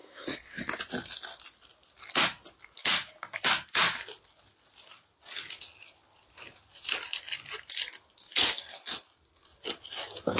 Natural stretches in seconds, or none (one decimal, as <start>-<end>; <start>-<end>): 0.6-10.4